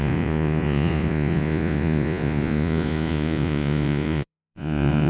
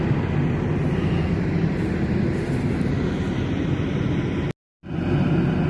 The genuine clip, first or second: second